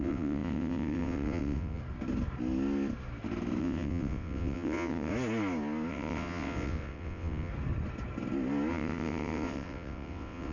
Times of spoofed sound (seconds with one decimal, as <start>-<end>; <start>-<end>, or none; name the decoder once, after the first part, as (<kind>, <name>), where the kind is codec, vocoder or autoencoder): 0.0-1.8 (vocoder, WaveNeXt); 3.6-5.1; 5.9-7.5; 8.7-10.5